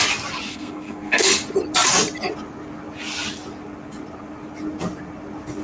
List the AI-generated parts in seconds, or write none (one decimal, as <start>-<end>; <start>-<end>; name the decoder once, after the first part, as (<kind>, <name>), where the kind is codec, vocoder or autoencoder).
0.5-1.3 (codec, SNAC)